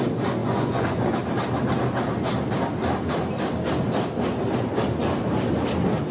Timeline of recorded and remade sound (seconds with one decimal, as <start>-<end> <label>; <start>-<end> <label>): 0.0-0.4 recorded; 0.4-1.2 remade; 1.2-6.1 recorded